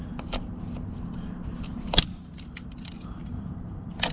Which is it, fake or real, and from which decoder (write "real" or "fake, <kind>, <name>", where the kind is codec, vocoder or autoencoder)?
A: real